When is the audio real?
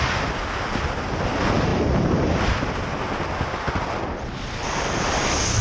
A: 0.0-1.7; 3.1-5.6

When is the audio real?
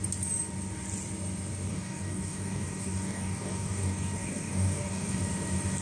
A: 0.0-1.7; 5.2-5.8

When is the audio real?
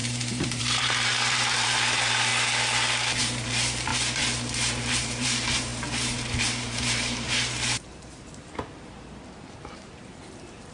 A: 2.3-3.2; 3.9-4.9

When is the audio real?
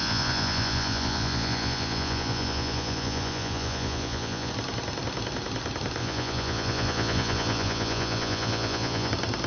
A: 4.5-6.0; 9.1-9.5